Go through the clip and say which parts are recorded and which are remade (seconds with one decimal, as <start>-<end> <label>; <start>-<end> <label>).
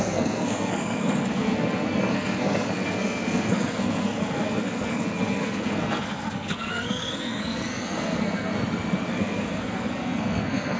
0.0-8.5 remade; 8.5-9.1 recorded; 9.1-10.8 remade